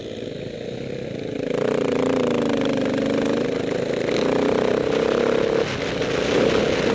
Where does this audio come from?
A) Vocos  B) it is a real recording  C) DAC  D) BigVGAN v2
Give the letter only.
B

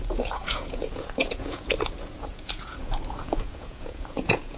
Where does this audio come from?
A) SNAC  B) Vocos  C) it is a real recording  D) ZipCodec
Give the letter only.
B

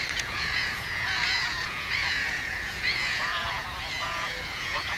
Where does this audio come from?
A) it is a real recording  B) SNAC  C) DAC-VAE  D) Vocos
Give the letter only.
D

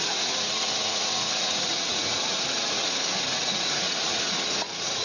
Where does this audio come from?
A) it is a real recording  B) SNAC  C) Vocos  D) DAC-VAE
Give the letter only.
C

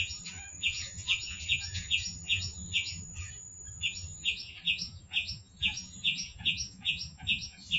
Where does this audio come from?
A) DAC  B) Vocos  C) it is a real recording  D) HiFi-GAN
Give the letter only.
B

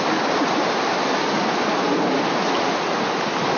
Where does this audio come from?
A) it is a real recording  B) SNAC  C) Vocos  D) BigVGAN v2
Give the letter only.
A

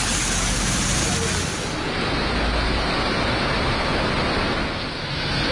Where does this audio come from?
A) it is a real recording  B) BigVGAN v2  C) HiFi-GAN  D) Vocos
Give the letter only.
A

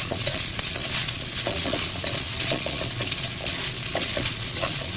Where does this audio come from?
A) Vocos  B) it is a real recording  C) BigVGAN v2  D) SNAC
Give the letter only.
A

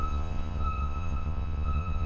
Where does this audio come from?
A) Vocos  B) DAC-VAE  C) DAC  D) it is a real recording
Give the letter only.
A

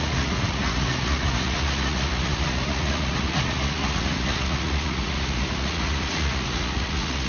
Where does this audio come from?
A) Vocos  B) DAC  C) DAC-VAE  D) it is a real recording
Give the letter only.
A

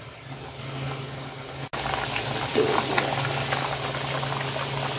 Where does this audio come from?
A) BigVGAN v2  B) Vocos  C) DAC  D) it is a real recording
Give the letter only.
D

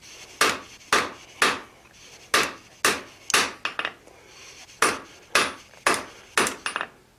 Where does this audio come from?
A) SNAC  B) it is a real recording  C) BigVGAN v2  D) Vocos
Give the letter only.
B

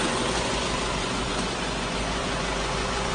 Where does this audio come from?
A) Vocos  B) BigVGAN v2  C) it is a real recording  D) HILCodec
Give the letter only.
A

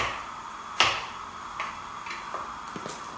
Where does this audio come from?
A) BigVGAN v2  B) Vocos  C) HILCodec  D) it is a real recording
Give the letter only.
D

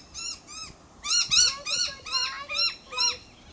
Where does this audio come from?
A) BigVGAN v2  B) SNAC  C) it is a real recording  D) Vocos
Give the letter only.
C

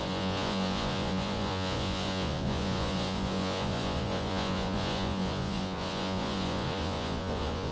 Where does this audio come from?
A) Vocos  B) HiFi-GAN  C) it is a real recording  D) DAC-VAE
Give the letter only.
A